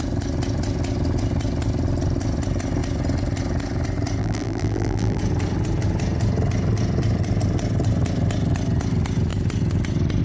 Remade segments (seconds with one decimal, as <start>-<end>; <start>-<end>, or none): 4.2-5.2